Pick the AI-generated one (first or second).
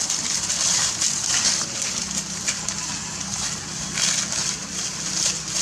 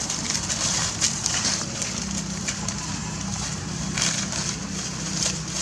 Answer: second